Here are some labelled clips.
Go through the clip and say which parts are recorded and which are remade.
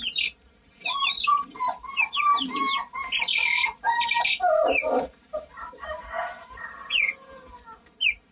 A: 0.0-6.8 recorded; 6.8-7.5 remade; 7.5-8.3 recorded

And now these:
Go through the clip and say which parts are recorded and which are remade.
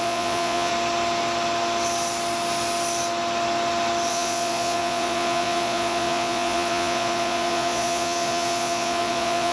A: 0.0-0.7 remade; 0.7-4.1 recorded; 4.1-9.5 remade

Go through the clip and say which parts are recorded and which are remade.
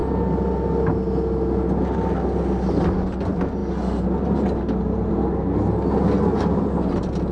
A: 0.0-7.3 recorded